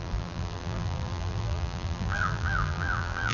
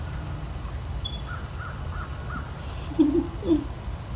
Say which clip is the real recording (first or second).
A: second